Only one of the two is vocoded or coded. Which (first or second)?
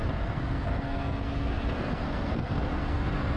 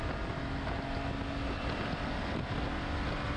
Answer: first